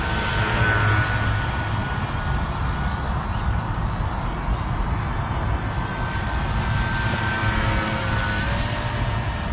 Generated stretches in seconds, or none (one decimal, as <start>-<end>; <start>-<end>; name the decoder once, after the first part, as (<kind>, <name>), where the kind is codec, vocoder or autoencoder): none